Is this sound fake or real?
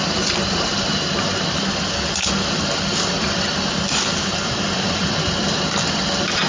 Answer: real